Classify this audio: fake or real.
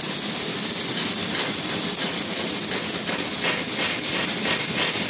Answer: real